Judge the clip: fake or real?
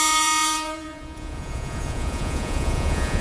fake